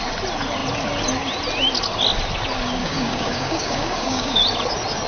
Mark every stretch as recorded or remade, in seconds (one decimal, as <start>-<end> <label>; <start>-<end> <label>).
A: 0.0-2.8 recorded; 2.8-4.4 remade; 4.4-5.1 recorded